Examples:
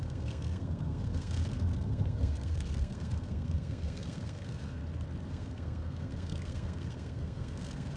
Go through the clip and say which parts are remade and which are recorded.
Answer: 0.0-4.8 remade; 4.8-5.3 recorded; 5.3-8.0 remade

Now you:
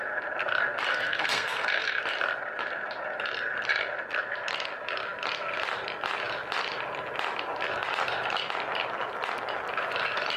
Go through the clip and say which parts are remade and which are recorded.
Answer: 0.0-0.9 recorded; 0.9-2.0 remade; 2.0-10.4 recorded

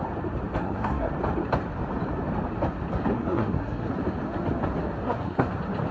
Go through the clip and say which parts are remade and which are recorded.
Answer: 0.0-0.6 recorded; 0.6-1.1 remade; 1.1-3.1 recorded; 3.1-3.9 remade; 3.9-5.0 recorded; 5.0-5.5 remade; 5.5-5.9 recorded

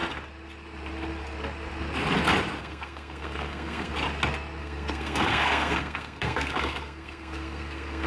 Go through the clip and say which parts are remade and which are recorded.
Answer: 0.0-2.6 recorded; 2.6-3.9 remade; 3.9-4.6 recorded; 4.6-8.1 remade